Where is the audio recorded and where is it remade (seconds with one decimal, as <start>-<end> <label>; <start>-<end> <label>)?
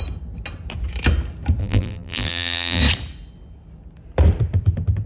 0.0-1.6 recorded; 1.6-2.8 remade; 2.8-5.1 recorded